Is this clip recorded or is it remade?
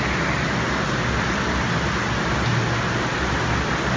recorded